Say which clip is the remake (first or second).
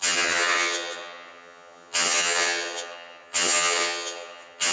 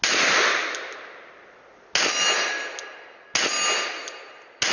first